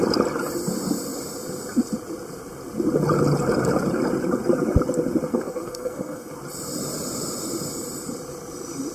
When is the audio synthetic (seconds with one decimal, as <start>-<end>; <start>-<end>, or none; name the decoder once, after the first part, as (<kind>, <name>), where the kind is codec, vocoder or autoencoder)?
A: 5.3-6.3 (codec, SNAC)